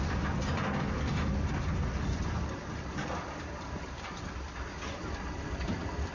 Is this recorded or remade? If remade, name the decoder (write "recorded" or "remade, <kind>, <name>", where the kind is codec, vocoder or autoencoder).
recorded